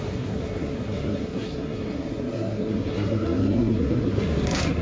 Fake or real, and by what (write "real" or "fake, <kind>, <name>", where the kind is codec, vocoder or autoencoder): fake, codec, SNAC